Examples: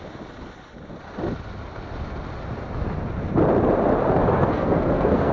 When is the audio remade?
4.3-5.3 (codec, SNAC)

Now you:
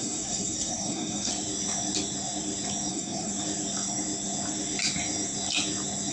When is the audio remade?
0.0-1.3 (codec, SNAC); 2.9-3.3

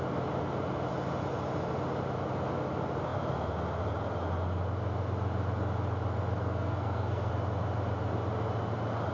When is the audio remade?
6.4-7.3 (codec, SNAC)